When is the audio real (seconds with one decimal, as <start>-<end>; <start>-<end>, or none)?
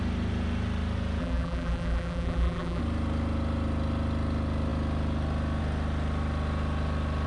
0.0-1.2; 2.8-7.3